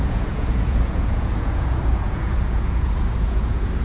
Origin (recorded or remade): remade